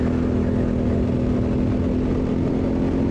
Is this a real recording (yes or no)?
yes